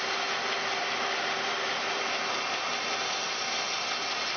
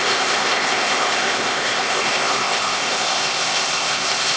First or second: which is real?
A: first